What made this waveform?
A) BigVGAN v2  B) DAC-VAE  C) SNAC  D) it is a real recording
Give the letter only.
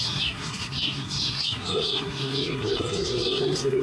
C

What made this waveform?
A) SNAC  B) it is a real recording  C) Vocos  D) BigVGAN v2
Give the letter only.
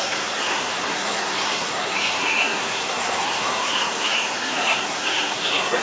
A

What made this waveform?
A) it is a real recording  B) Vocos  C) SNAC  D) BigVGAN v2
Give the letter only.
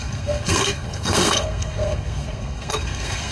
C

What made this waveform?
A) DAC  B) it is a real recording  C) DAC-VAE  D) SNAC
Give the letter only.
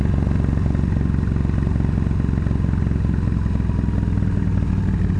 B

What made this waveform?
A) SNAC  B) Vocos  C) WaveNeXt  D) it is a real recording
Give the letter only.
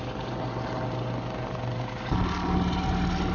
D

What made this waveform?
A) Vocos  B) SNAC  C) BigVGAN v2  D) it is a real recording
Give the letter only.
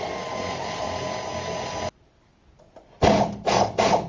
D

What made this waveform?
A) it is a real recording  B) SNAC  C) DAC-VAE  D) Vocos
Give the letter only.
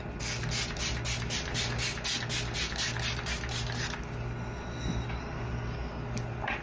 A